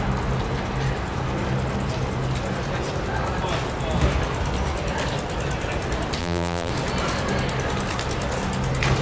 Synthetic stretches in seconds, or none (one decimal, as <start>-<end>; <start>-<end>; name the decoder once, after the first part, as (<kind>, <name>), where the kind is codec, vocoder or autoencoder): 6.2-6.7 (vocoder, BigVGAN v2)